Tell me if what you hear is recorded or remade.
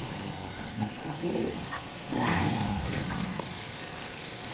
remade